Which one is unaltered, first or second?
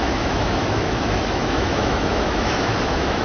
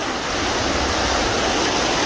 second